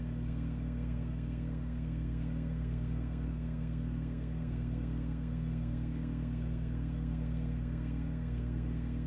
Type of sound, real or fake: fake